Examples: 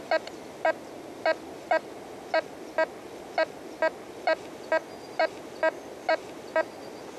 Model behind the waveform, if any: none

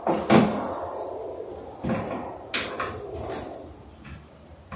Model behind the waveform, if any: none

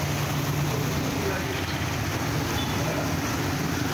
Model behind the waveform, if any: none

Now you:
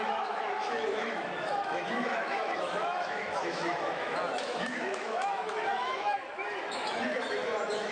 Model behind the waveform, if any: autoencoder, DAC-VAE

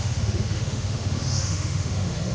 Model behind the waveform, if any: autoencoder, DAC-VAE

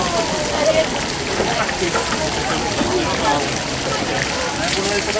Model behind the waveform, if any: none